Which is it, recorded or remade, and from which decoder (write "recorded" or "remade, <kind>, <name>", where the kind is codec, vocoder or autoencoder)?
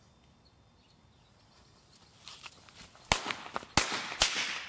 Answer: recorded